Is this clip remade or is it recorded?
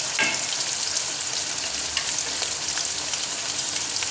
recorded